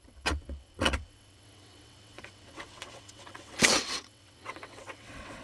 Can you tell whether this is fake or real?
fake